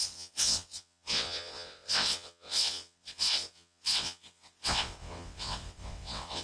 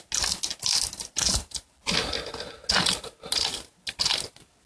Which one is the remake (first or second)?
first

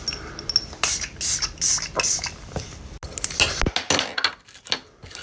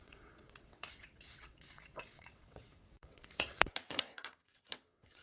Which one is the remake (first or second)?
second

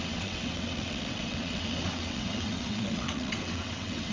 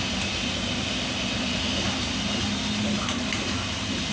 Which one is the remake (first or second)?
first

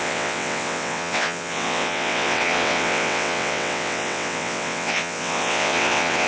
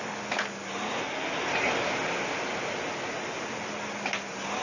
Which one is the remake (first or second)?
first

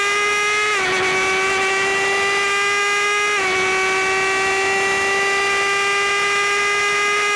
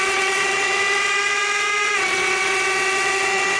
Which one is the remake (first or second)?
second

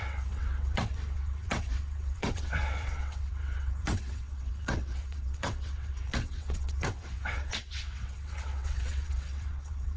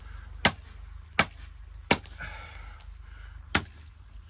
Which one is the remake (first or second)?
first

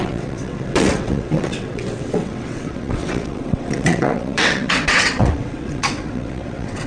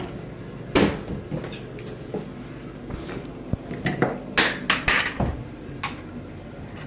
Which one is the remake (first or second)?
first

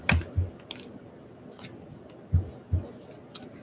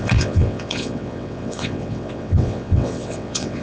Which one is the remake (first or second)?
second